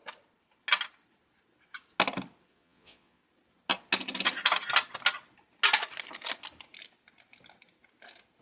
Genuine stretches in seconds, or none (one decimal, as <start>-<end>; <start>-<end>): 0.0-2.5; 3.2-8.4